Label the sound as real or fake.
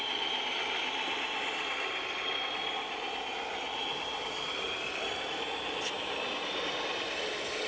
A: real